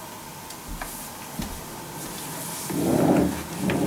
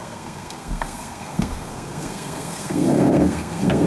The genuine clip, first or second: first